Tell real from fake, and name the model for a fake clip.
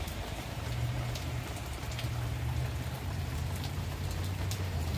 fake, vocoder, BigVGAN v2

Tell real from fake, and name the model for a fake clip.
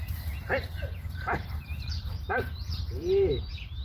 fake, vocoder, BigVGAN v2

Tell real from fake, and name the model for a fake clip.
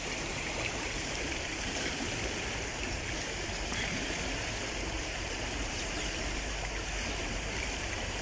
fake, vocoder, BigVGAN v2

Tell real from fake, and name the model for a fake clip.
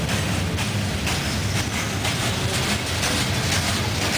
real